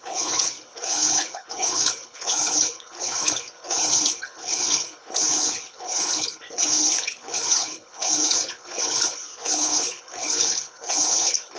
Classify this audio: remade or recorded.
remade